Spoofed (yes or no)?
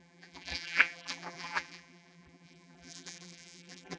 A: yes